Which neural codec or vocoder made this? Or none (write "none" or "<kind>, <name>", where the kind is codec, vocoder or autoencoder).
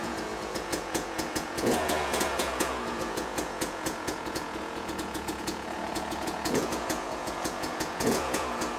vocoder, Vocos